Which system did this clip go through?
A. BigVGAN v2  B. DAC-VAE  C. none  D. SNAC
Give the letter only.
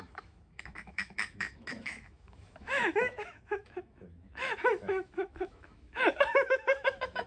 B